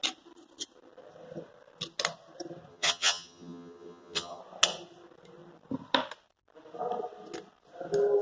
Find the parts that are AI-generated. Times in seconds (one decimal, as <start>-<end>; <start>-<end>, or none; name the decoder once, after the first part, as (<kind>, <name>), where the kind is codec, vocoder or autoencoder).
2.7-4.4 (vocoder, HiFi-GAN)